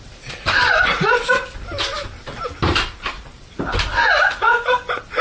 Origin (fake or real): real